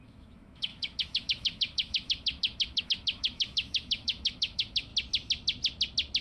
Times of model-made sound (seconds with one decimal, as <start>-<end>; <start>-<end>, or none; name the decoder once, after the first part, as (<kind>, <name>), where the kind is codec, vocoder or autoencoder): 0.0-4.9 (autoencoder, DAC-VAE)